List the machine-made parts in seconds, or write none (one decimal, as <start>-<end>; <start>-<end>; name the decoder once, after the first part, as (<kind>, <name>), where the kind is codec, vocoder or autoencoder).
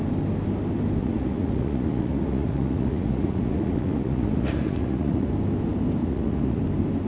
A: 1.0-5.3 (vocoder, Vocos); 6.0-6.6